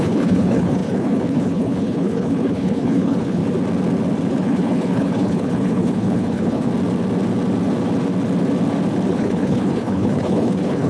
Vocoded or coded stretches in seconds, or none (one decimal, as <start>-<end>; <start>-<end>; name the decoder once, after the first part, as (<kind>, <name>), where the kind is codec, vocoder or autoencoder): 0.0-3.4 (codec, HILCodec); 4.3-6.7; 9.1-10.9